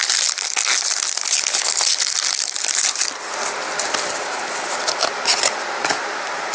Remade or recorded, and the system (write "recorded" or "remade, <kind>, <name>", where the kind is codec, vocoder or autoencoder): recorded